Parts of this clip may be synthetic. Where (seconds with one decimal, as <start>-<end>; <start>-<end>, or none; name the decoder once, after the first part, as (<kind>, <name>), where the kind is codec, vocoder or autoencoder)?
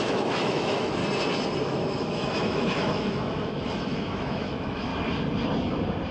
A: 0.0-1.0 (autoencoder, DAC-VAE); 1.6-4.9